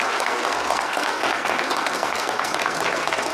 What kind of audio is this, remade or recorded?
remade